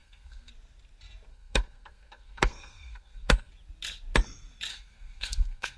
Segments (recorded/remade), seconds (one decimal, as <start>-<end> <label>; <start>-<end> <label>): 0.0-0.5 remade; 0.5-1.3 recorded; 1.3-3.5 remade; 3.5-4.7 recorded; 4.7-5.8 remade